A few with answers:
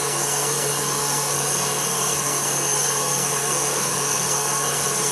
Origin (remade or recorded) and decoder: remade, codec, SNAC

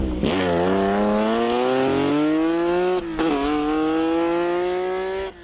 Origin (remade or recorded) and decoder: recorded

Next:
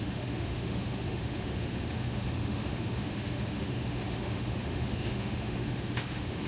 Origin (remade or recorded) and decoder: remade, autoencoder, DAC-VAE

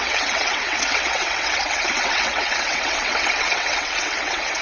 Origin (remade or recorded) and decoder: remade, vocoder, WaveNeXt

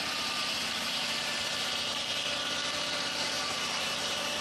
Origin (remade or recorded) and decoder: remade, vocoder, BigVGAN v2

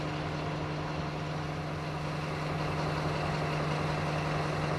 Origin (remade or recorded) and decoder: recorded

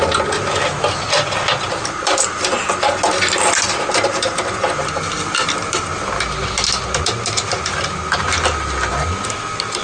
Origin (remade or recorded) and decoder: recorded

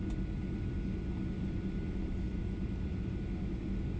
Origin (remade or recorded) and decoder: recorded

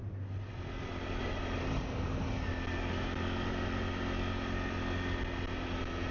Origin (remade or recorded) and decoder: recorded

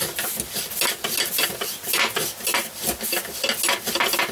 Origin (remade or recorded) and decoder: recorded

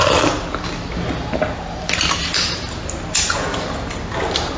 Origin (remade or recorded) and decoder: recorded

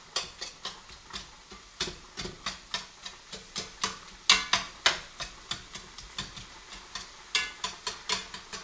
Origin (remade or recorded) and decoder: recorded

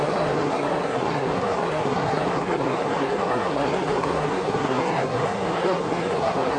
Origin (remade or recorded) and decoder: remade, codec, SNAC